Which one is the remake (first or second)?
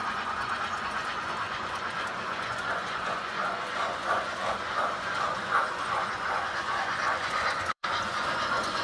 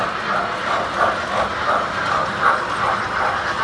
first